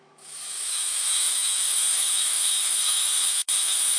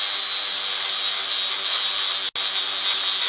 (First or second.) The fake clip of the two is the first